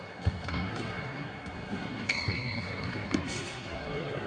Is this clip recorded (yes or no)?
no